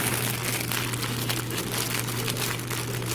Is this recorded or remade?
recorded